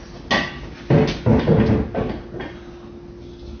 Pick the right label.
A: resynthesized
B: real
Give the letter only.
B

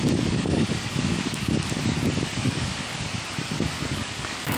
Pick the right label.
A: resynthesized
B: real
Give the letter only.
A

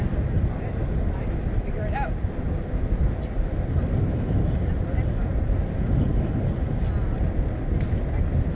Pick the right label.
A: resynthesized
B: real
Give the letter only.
B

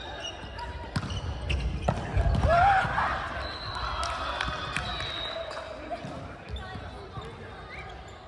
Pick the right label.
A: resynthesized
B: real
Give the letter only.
B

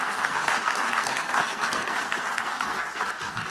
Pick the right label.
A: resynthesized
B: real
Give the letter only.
A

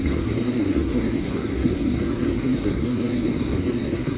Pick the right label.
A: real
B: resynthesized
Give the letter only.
B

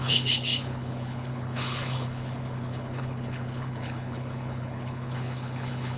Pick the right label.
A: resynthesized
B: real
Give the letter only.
A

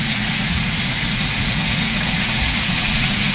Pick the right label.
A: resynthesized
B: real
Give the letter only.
A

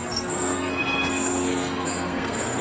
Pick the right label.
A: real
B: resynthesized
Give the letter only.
B